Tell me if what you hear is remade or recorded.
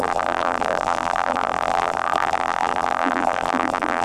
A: remade